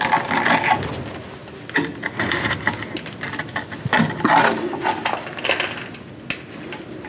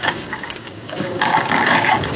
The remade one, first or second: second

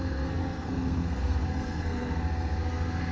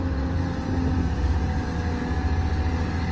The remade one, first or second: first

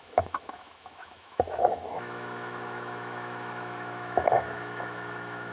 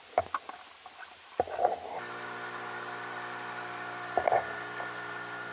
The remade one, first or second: first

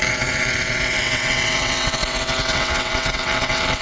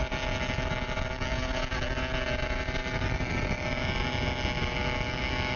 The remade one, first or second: first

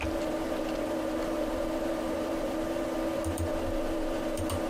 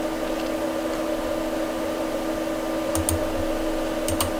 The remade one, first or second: first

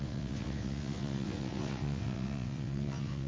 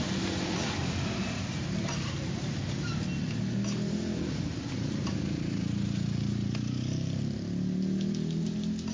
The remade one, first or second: first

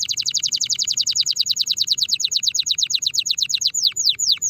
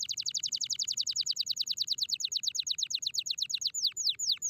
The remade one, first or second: first